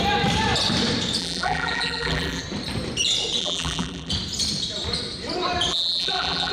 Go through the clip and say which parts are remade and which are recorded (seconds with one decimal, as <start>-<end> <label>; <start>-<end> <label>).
0.0-1.2 recorded; 1.2-2.4 remade; 2.4-3.4 recorded; 3.4-4.1 remade; 4.1-5.7 recorded; 5.7-6.5 remade